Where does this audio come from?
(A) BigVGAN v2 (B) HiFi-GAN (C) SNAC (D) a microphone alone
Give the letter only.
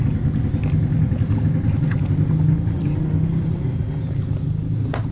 D